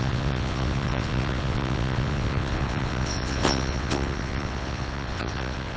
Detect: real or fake fake